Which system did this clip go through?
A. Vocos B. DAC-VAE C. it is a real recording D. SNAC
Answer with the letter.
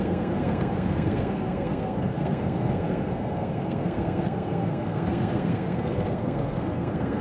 D